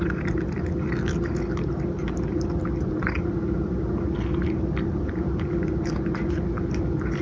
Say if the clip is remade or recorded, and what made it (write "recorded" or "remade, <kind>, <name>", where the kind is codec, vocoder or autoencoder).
recorded